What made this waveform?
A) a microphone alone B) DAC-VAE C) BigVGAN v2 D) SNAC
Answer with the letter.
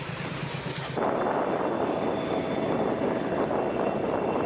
A